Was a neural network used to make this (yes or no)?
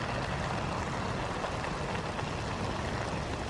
no